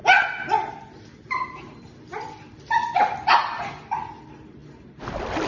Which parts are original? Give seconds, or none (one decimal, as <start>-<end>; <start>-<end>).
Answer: 0.0-5.5